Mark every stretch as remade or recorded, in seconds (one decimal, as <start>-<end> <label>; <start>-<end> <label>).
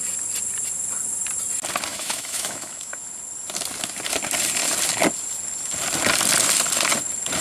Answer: 0.0-1.9 recorded; 1.9-2.9 remade; 2.9-7.4 recorded